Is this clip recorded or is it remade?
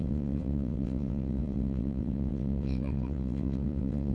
remade